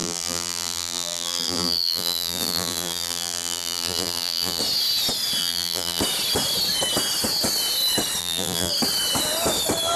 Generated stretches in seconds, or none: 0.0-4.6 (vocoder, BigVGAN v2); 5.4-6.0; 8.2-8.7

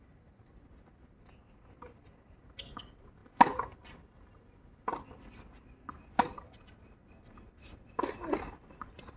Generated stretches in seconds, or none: none

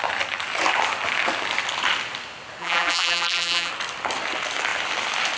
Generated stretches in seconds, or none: 2.6-3.7 (vocoder, BigVGAN v2)